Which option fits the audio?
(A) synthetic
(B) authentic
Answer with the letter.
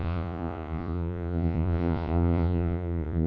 A